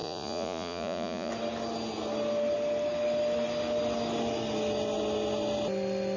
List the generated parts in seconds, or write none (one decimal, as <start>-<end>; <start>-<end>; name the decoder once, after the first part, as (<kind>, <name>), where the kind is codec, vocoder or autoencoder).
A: 0.0-1.3 (vocoder, Vocos)